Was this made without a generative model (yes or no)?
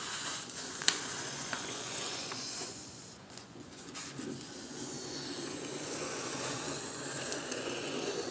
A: no